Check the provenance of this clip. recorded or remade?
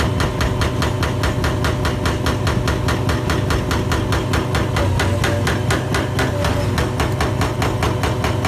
recorded